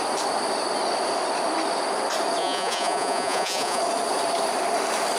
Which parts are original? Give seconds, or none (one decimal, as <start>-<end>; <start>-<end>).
0.0-2.4; 3.8-5.2